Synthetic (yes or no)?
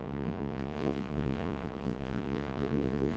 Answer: yes